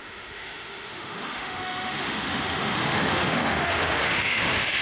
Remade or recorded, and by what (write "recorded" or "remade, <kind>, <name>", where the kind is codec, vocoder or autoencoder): remade, autoencoder, DAC-VAE